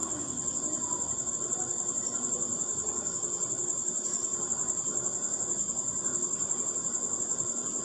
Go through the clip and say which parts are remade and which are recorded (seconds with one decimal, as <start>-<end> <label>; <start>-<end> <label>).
0.0-1.3 recorded; 1.3-7.8 remade